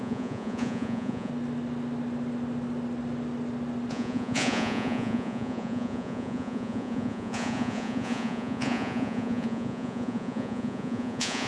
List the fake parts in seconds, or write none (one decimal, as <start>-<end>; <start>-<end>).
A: 0.0-1.3; 3.9-11.5